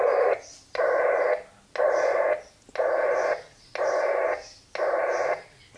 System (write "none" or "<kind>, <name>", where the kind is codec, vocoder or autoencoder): none